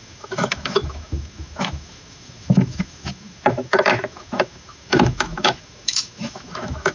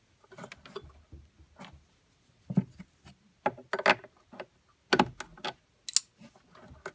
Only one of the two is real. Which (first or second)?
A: second